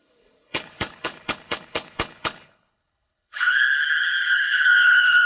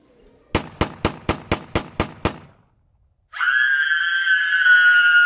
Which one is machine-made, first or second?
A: first